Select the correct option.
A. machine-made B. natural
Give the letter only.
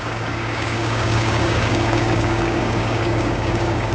A